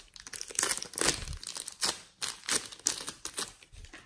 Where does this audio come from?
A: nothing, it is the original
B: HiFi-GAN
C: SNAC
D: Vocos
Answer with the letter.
A